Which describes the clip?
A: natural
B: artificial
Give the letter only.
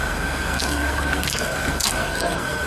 B